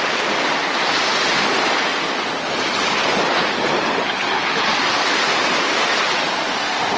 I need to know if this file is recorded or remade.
recorded